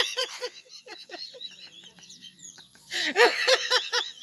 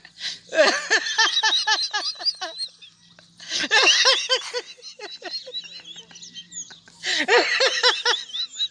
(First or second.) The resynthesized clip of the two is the first